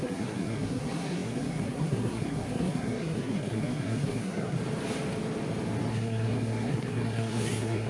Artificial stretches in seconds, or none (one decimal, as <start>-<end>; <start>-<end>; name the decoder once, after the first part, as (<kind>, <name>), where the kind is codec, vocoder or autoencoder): 0.0-4.6 (codec, SNAC); 5.9-7.9